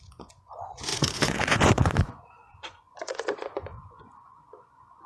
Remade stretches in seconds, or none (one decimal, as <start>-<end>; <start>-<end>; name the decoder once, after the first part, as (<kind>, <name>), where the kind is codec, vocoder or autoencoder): 0.0-5.1 (vocoder, Vocos)